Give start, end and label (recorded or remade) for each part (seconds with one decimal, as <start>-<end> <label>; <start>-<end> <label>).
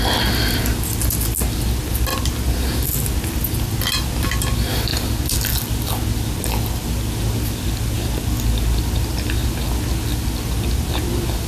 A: 0.0-11.5 recorded